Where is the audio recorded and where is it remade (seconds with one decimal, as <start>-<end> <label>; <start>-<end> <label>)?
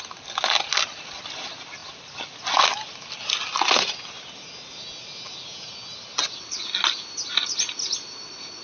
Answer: 0.0-8.6 recorded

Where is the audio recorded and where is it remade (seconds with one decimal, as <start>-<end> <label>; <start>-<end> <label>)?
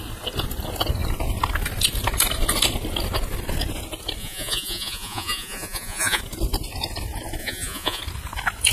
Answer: 0.0-4.2 recorded; 4.2-6.2 remade; 6.2-7.4 recorded; 7.4-8.0 remade; 8.0-8.7 recorded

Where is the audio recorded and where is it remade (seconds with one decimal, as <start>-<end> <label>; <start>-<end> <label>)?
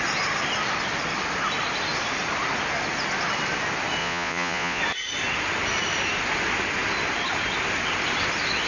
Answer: 0.0-4.0 recorded; 4.0-4.8 remade; 4.8-8.7 recorded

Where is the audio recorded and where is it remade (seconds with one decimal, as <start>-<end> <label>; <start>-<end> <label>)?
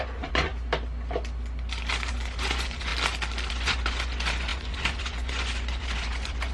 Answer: 0.0-0.5 remade; 0.5-2.1 recorded; 2.1-2.9 remade; 2.9-3.5 recorded; 3.5-6.5 remade